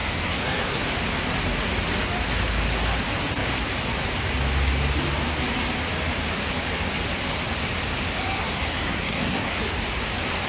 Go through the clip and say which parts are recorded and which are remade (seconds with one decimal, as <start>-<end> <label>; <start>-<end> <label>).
0.0-0.8 remade; 0.8-8.4 recorded; 8.4-9.6 remade; 9.6-10.5 recorded